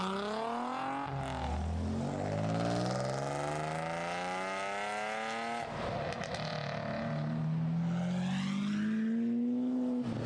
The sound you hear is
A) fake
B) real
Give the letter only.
B